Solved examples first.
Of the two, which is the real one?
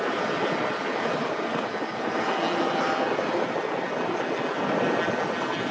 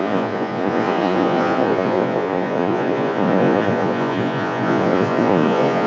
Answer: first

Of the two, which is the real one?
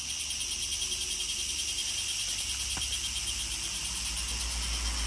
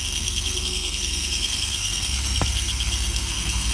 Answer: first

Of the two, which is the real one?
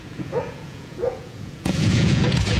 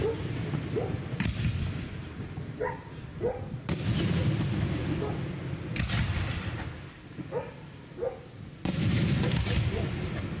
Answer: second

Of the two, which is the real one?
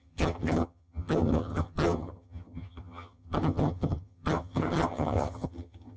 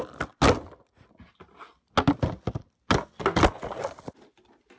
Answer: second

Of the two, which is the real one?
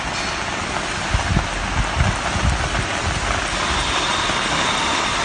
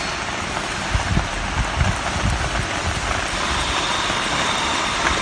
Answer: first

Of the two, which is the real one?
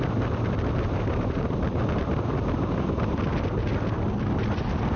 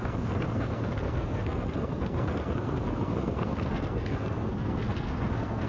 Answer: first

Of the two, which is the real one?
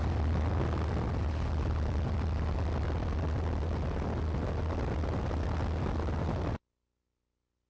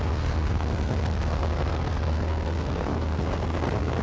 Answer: first